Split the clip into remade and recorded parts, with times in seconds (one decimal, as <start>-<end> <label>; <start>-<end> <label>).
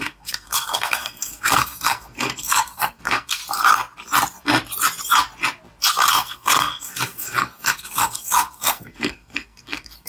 0.0-3.4 remade; 3.4-6.1 recorded; 6.1-10.1 remade